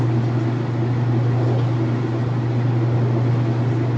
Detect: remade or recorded recorded